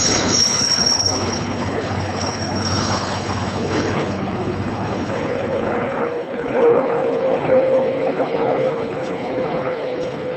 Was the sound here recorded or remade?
remade